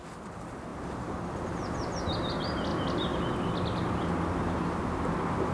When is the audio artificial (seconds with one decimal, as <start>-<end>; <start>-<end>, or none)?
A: none

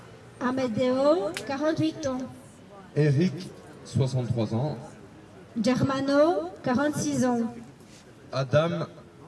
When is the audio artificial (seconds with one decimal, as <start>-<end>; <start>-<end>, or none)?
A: 1.6-2.2